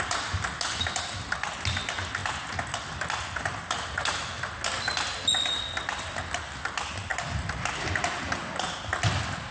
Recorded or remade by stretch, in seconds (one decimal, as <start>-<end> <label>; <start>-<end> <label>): 0.0-9.5 recorded